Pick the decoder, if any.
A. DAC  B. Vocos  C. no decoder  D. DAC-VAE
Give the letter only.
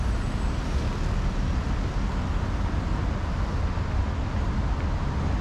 C